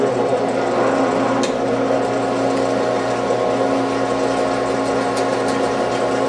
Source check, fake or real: real